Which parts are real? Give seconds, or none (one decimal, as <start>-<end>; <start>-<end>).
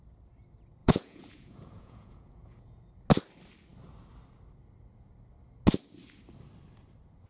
0.0-0.8; 2.8-7.3